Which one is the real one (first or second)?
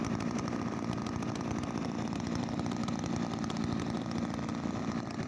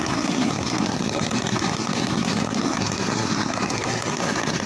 first